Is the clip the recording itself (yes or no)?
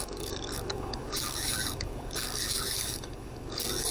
no